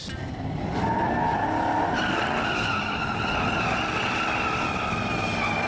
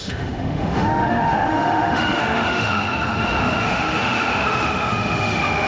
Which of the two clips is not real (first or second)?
second